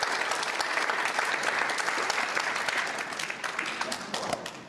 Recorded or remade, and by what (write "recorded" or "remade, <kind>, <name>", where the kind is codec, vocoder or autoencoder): recorded